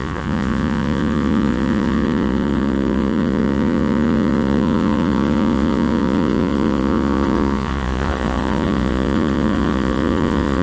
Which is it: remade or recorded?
remade